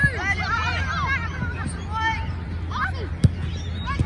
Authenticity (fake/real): real